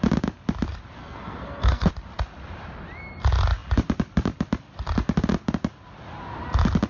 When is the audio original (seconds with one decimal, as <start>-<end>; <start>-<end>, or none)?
0.0-1.0; 1.9-6.9